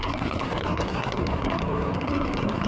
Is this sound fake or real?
fake